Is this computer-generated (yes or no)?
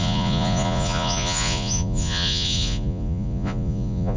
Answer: yes